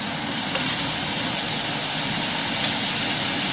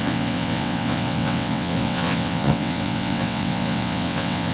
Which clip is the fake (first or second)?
second